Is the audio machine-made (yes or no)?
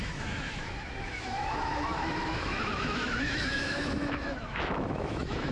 yes